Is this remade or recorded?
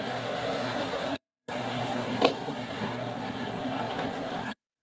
remade